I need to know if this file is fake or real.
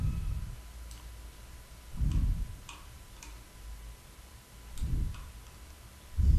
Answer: real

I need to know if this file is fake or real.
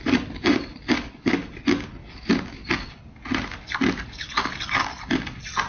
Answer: real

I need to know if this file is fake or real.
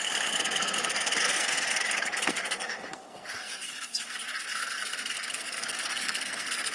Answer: fake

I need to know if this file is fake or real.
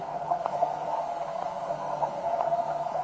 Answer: fake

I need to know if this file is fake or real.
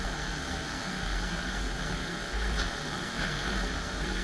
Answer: fake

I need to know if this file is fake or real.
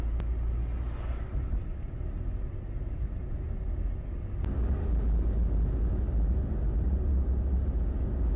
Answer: real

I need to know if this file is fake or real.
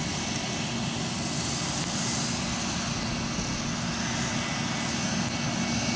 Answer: real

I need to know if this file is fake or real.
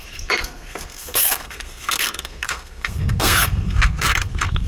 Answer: fake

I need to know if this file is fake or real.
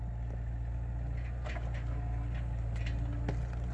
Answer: real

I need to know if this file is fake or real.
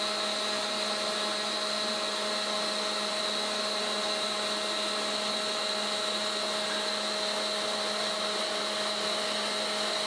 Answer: real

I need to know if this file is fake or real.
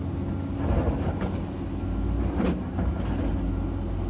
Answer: real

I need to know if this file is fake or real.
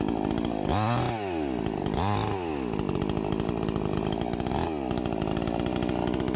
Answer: real